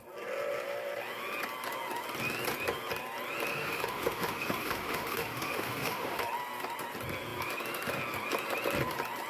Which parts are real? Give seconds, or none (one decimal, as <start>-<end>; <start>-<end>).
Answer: 0.0-3.5; 6.2-9.3